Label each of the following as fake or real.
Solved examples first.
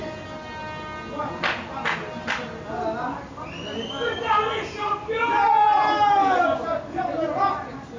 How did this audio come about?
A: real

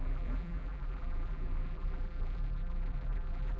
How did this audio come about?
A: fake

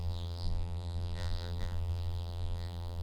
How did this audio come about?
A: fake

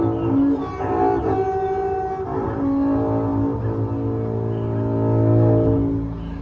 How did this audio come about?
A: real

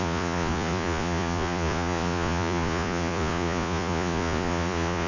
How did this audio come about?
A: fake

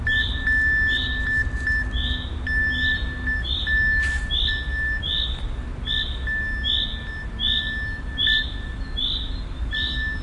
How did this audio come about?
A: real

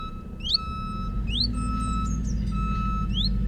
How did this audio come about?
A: real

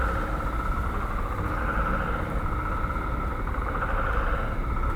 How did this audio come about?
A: real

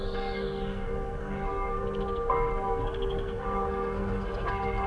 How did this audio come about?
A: fake